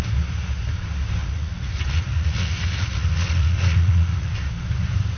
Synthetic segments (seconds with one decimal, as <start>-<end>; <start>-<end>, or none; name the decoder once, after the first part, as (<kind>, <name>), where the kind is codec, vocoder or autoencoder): 1.2-4.3 (vocoder, Vocos)